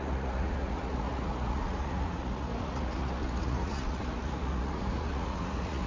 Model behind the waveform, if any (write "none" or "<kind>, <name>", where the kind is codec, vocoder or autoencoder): vocoder, Vocos